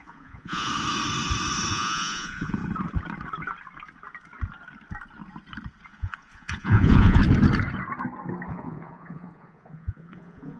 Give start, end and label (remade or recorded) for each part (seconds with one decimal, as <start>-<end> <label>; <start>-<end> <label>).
0.0-0.7 remade; 0.7-1.7 recorded; 1.7-2.6 remade; 2.6-5.9 recorded; 5.9-7.2 remade; 7.2-8.5 recorded; 8.5-10.6 remade